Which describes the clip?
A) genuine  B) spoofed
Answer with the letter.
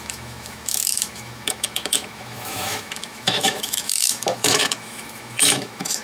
B